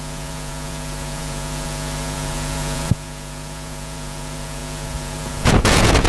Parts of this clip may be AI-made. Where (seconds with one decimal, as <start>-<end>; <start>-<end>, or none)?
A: 0.0-6.1